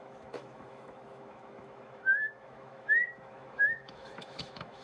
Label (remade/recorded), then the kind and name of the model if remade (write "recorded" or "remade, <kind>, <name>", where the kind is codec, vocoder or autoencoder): remade, autoencoder, DAC-VAE